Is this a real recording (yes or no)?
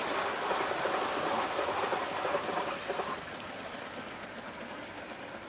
yes